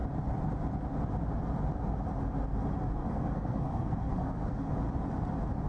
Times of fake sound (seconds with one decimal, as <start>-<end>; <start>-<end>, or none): 3.0-4.7